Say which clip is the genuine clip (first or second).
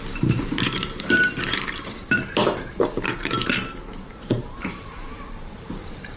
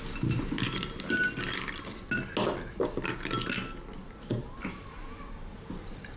second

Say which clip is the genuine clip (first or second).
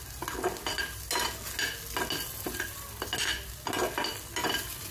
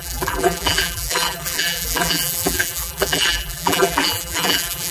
first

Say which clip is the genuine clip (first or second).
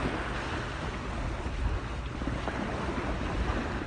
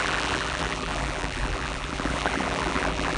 first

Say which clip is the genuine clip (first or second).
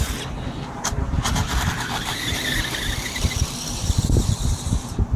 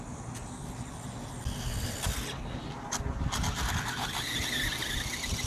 second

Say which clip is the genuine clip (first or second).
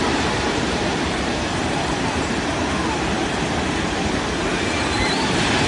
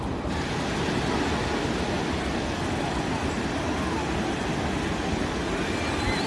second